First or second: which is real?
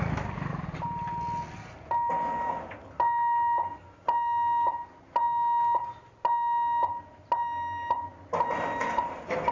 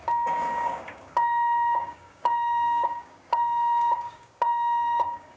first